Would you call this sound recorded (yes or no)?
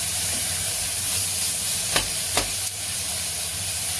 no